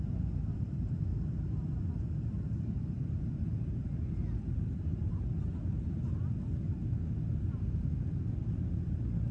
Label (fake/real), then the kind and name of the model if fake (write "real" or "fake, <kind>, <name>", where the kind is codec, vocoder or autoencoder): fake, vocoder, BigVGAN v2